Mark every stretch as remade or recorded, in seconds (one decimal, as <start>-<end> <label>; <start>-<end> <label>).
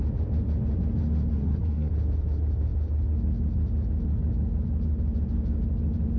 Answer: 0.0-1.3 recorded; 1.3-1.9 remade; 1.9-6.2 recorded